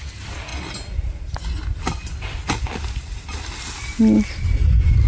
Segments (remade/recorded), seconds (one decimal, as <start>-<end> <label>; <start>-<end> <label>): 0.0-5.1 recorded